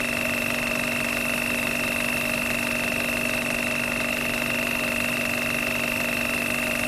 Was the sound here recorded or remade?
recorded